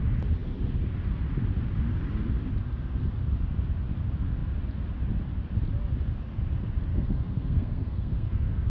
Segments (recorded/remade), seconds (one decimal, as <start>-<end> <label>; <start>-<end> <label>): 0.0-6.9 recorded; 6.9-8.7 remade